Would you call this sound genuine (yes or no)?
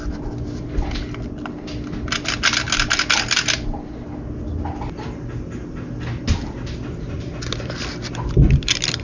yes